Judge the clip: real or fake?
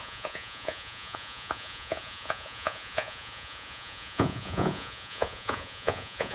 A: fake